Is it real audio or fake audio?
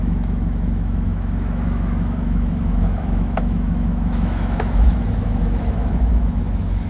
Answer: fake